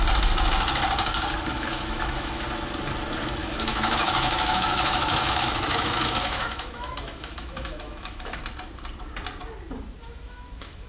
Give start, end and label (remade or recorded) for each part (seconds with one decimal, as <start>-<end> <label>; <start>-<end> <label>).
0.0-1.5 recorded; 1.5-2.4 remade; 2.4-3.4 recorded; 3.4-8.4 remade; 8.4-10.0 recorded; 10.0-10.9 remade

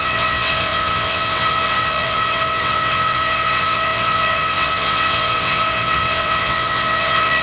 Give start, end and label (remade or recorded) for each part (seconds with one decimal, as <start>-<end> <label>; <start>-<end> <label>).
0.0-7.4 remade

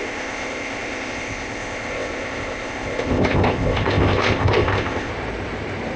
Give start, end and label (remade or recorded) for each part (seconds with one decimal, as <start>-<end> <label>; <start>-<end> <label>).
0.0-5.1 remade; 5.1-6.0 recorded

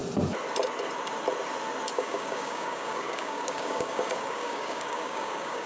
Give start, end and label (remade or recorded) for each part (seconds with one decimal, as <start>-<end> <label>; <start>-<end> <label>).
0.0-1.9 recorded; 1.9-5.7 remade

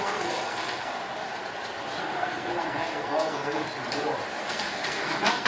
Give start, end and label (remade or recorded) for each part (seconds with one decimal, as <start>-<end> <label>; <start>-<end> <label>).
0.0-1.0 remade; 1.0-2.0 recorded; 2.0-3.6 remade; 3.6-4.4 recorded; 4.4-5.5 remade